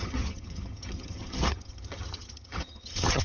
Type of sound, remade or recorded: remade